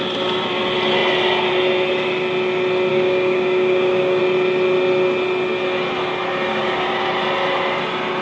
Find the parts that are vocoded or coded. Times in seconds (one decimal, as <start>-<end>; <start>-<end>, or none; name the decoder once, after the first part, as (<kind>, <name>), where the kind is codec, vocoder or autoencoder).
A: 2.9-4.2 (codec, DAC); 6.5-7.1